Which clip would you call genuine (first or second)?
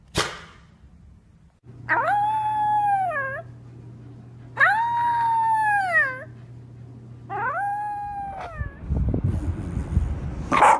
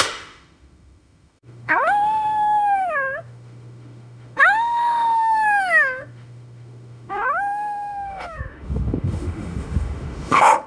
first